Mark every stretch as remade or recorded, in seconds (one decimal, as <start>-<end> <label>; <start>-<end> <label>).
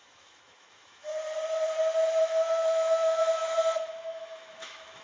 0.0-1.1 remade; 1.1-2.2 recorded; 2.2-3.2 remade; 3.2-3.8 recorded; 3.8-5.0 remade